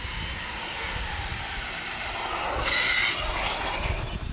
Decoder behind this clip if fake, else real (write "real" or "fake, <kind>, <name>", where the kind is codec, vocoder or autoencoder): real